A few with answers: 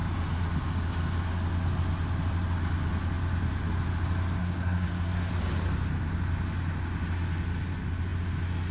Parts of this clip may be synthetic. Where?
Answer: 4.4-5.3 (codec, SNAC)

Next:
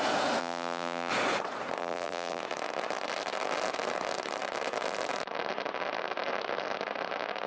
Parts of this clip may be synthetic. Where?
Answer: 0.4-1.1 (vocoder, BigVGAN v2); 1.8-2.4